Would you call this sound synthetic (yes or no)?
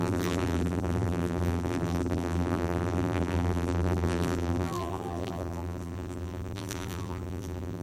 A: yes